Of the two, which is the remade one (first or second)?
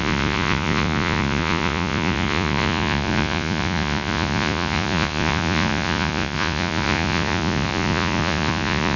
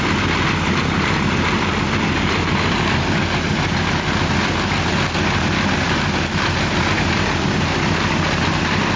first